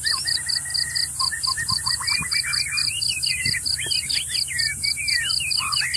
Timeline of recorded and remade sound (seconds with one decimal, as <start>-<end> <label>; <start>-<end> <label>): 0.0-2.8 recorded; 2.8-4.1 remade; 4.1-6.0 recorded